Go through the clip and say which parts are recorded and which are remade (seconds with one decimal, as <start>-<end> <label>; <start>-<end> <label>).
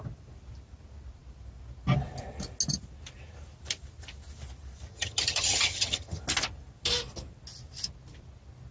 0.0-4.9 recorded; 4.9-6.2 remade; 6.2-8.7 recorded